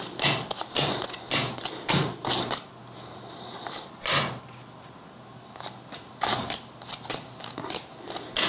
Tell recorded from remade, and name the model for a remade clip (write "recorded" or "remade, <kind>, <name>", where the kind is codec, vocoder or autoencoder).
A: recorded